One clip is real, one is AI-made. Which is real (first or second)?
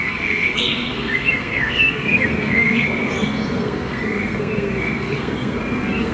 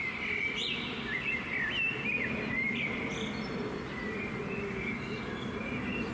second